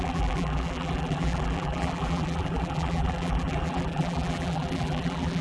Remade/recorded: remade